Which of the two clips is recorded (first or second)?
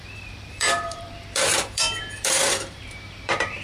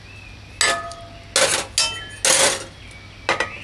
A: second